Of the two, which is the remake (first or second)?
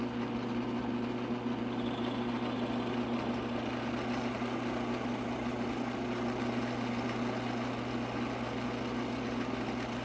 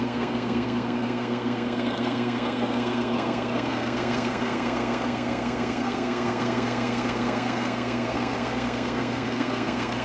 second